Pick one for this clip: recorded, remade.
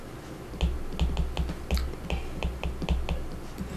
recorded